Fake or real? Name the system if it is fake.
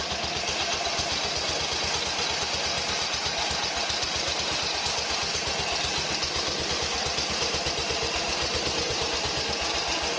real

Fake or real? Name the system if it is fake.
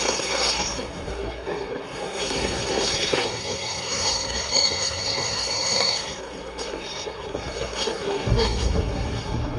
fake, codec, SNAC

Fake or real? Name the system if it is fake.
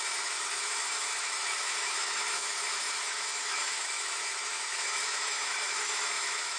fake, autoencoder, DAC-VAE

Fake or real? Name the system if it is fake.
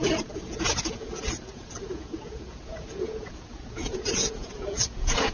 fake, vocoder, Vocos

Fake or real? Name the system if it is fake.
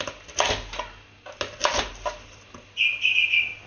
real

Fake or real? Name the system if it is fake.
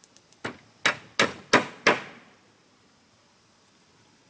real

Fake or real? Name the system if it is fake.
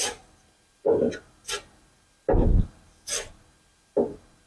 real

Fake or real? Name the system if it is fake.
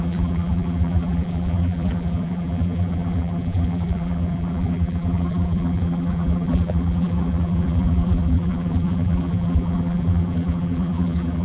fake, vocoder, BigVGAN v2